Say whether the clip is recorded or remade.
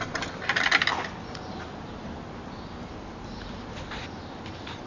recorded